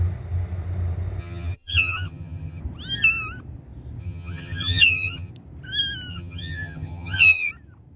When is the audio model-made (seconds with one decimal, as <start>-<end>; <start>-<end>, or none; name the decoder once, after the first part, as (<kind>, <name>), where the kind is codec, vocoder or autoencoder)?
1.2-2.6 (vocoder, HiFi-GAN); 4.0-5.3; 6.1-7.5

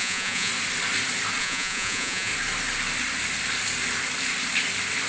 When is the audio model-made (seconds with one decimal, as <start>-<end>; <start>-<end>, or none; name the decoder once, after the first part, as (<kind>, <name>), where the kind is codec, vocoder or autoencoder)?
0.0-0.5 (vocoder, Vocos); 1.4-2.3

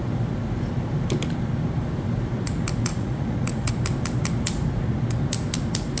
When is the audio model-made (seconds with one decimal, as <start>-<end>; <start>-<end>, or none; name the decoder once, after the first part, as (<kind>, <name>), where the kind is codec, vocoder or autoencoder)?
2.9-3.7 (vocoder, Vocos)

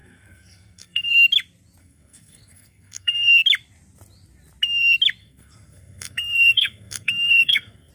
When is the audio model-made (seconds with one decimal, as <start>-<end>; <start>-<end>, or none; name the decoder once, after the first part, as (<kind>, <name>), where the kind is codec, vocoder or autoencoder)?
0.0-1.1 (codec, SNAC); 1.8-3.3; 5.2-7.9

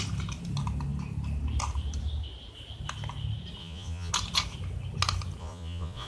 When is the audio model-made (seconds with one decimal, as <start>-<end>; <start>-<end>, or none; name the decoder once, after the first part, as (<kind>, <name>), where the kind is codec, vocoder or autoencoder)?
3.6-4.1 (vocoder, Vocos); 5.4-6.1

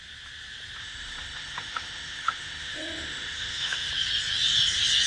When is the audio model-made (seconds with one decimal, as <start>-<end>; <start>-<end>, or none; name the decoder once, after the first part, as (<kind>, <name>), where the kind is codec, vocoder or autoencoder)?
0.8-3.9 (autoencoder, DAC-VAE)